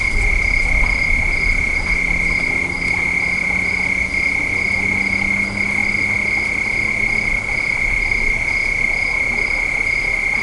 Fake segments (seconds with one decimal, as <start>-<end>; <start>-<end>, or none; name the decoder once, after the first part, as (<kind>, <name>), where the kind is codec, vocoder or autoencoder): none